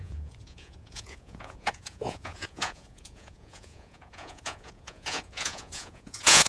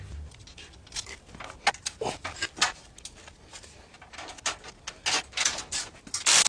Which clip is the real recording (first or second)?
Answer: second